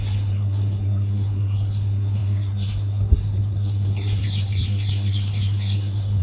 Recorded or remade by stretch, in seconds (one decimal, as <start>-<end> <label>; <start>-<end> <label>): 0.0-6.2 remade